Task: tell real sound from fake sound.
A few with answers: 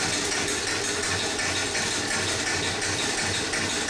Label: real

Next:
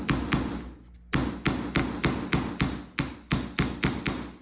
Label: real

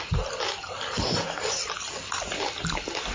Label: real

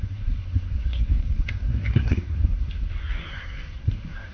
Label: fake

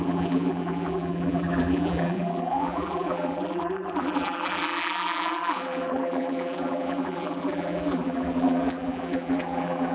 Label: fake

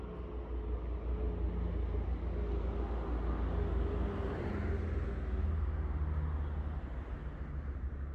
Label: real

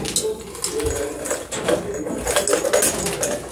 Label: real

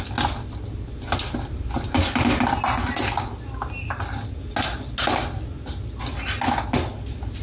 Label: real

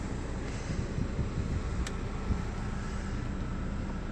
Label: real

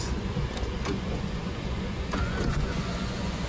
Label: fake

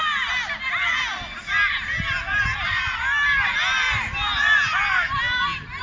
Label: real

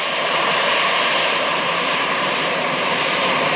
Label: fake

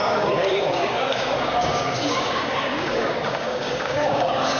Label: fake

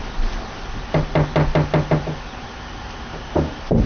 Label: real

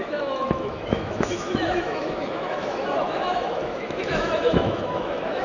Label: fake